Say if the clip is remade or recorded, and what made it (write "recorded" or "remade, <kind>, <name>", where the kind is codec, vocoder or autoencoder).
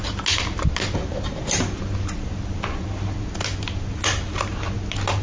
recorded